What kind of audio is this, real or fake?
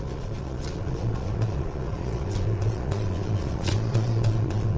fake